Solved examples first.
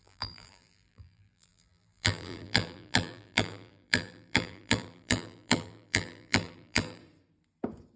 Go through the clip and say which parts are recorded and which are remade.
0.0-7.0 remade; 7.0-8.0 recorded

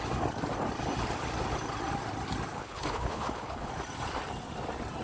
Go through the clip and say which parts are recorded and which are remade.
0.0-2.5 recorded; 2.5-3.7 remade; 3.7-5.0 recorded

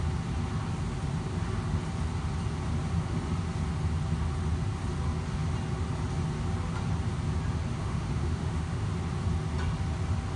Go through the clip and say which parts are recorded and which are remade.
0.0-7.8 recorded; 7.8-8.9 remade; 8.9-10.4 recorded